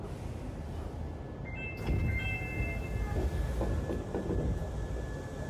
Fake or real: real